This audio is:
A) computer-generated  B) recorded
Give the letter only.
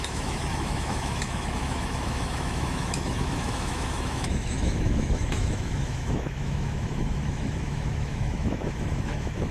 A